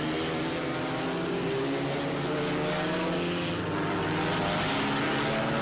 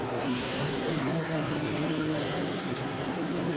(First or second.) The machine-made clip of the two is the second